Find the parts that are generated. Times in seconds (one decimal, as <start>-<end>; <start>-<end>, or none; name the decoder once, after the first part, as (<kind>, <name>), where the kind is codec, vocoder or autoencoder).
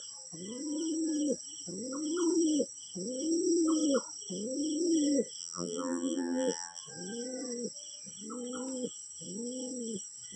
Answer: 5.4-6.8 (vocoder, BigVGAN v2)